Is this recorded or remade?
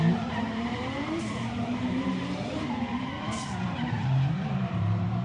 remade